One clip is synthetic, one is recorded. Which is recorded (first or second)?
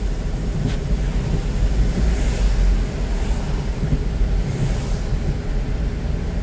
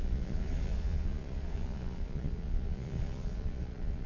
first